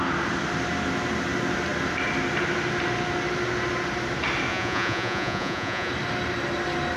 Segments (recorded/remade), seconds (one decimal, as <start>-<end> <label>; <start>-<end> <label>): 0.0-4.5 recorded; 4.5-5.9 remade; 5.9-7.0 recorded